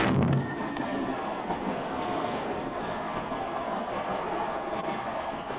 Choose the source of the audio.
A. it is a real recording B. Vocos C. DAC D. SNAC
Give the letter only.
D